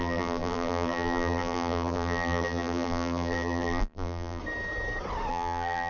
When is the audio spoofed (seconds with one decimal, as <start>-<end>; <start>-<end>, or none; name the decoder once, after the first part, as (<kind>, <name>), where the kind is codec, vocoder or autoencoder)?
0.0-4.4 (vocoder, BigVGAN v2); 5.3-5.9